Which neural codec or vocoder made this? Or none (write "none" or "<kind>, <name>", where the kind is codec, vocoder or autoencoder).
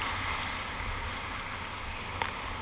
none